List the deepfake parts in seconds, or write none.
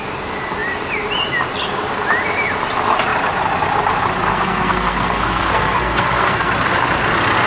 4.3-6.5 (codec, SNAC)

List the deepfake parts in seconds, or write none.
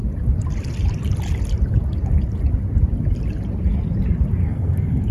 4.4-5.1 (codec, SNAC)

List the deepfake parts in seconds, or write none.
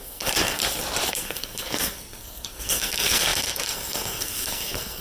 0.0-0.6 (codec, SNAC); 1.1-5.0